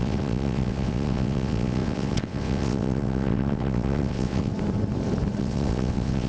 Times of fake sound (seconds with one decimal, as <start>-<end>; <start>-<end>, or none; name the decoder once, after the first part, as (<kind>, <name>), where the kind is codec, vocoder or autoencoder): 0.0-4.5 (vocoder, WaveNeXt); 5.4-6.3